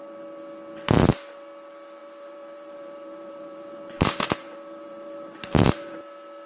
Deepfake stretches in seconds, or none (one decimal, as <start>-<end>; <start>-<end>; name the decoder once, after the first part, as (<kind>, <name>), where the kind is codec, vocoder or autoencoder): 2.0-5.9 (vocoder, BigVGAN v2)